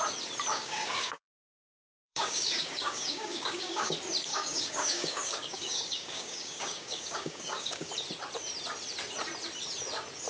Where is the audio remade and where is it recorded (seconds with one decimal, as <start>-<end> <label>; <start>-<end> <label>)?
0.0-0.5 recorded; 0.5-3.9 remade; 3.9-4.3 recorded; 4.3-7.9 remade; 7.9-10.3 recorded